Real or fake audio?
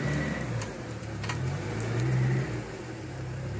fake